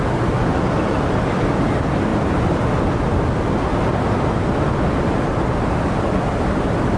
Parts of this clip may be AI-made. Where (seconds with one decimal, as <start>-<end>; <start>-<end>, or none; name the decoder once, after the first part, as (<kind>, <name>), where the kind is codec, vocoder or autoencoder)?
none